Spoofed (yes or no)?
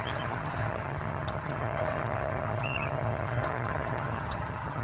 yes